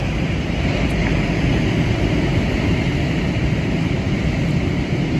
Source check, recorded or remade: recorded